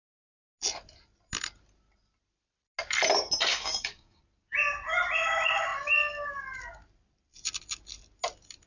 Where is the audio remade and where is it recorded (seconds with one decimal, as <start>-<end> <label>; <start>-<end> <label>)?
0.0-3.5 recorded; 3.5-4.2 remade; 4.2-8.7 recorded